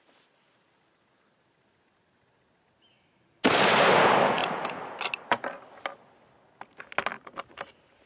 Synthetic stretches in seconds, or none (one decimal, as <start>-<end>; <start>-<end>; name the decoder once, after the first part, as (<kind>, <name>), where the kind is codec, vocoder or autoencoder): none